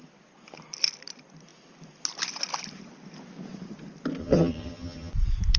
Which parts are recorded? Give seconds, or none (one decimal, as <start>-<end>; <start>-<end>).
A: 0.0-4.2; 5.1-5.6